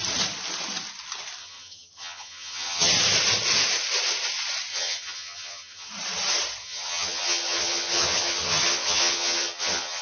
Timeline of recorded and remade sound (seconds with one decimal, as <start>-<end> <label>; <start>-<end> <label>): 0.0-1.4 recorded; 1.4-2.9 remade; 2.9-4.7 recorded; 4.7-5.9 remade; 5.9-6.6 recorded; 6.6-10.0 remade